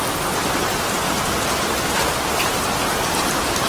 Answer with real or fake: real